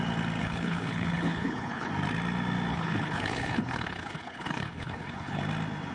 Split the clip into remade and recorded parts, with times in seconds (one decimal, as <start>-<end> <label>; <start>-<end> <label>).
0.0-0.4 recorded; 0.4-1.9 remade; 1.9-2.7 recorded; 2.7-5.4 remade; 5.4-5.9 recorded